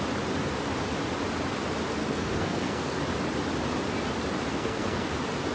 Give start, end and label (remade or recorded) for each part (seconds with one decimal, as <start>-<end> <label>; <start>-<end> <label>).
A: 0.0-2.0 recorded; 2.0-3.0 remade; 3.0-4.5 recorded; 4.5-5.1 remade; 5.1-5.5 recorded